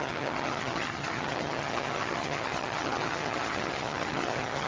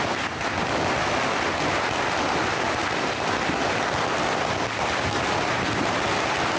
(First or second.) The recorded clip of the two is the second